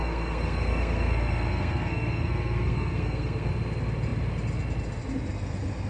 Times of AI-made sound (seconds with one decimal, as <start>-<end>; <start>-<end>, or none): 0.0-3.5